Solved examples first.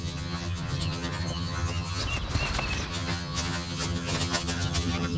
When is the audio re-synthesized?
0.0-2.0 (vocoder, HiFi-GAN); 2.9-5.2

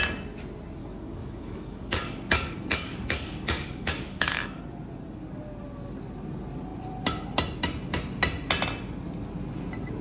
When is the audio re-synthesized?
0.8-4.6 (codec, DAC)

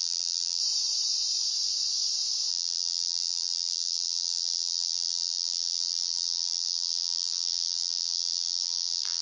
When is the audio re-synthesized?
0.0-0.6 (vocoder, BigVGAN v2); 2.5-9.2

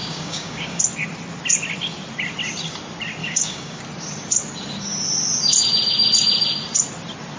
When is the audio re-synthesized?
0.0-0.8 (codec, DAC); 3.2-3.8